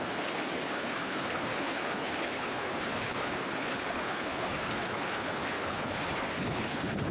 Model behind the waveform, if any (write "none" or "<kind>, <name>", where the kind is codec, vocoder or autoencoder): codec, HILCodec